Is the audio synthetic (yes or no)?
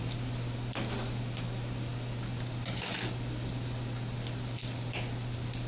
no